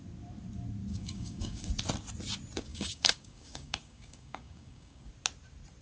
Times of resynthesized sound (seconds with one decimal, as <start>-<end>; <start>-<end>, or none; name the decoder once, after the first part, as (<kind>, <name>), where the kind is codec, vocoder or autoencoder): 0.9-1.7 (codec, DAC); 2.7-5.1